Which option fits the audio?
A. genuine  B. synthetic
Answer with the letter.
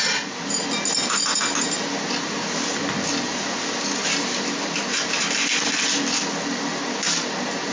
A